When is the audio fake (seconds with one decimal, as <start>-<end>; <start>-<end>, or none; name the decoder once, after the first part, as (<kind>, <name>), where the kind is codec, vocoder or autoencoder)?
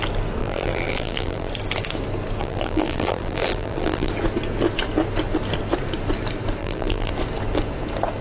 0.4-1.5 (vocoder, BigVGAN v2); 2.4-4.1; 6.6-7.1